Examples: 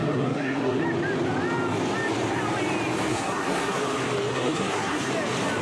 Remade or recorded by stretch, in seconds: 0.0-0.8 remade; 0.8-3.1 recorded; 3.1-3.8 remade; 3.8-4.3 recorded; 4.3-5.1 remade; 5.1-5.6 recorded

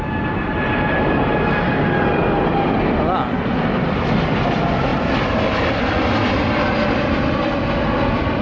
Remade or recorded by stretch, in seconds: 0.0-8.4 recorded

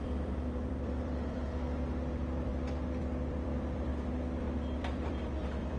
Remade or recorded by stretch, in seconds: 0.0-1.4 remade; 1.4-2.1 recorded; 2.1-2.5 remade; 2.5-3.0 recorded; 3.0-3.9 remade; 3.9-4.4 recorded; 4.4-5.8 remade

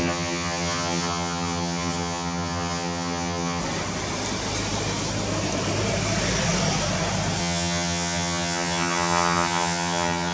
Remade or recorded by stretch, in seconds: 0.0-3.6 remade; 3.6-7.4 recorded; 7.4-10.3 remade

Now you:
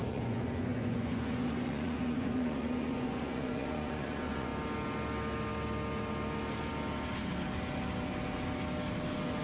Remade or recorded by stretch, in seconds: 0.0-4.5 remade; 4.5-9.4 recorded

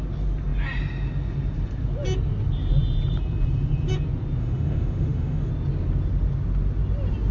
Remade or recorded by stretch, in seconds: 0.0-4.4 recorded; 4.4-5.5 remade; 5.5-7.3 recorded